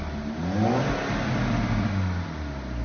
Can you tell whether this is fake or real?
real